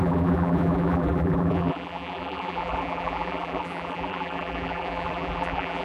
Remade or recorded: remade